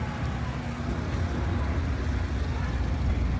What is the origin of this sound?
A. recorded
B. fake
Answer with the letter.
A